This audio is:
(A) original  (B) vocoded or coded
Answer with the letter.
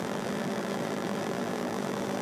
B